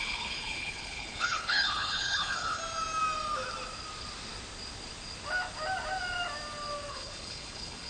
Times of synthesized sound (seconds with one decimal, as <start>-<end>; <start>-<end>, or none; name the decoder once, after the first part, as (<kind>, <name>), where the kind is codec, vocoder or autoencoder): 0.0-2.6 (codec, HILCodec); 6.9-7.9

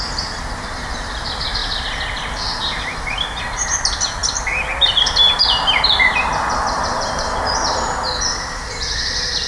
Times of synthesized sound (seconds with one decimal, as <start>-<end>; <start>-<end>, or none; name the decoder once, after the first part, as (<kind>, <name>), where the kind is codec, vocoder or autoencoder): none

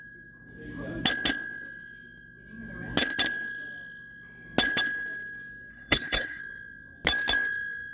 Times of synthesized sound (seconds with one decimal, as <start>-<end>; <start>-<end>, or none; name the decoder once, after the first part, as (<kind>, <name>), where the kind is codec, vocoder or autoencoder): 5.7-6.4 (codec, HILCodec)

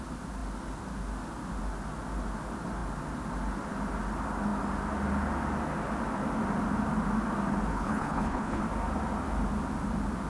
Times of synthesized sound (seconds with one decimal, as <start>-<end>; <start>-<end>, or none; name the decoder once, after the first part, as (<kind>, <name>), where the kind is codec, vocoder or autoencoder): 7.7-8.6 (codec, HILCodec)